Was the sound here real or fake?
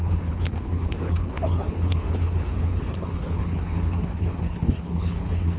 fake